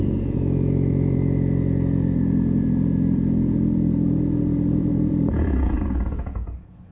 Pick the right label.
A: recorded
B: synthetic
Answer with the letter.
B